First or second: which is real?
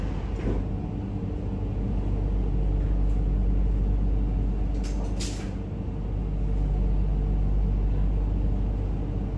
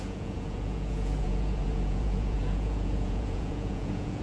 first